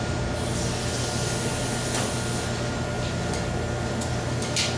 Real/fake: real